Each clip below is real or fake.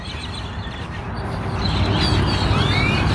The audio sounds real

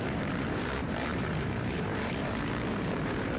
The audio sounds fake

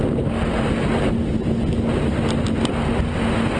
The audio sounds real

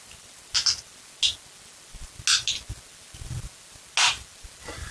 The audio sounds real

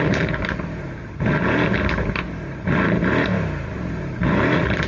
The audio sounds fake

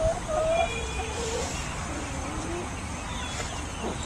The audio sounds real